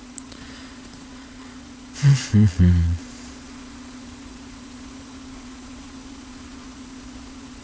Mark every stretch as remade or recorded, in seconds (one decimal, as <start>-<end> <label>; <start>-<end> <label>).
0.0-7.6 remade